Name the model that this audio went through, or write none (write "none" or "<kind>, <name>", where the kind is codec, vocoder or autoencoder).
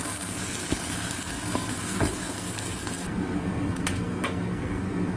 codec, SNAC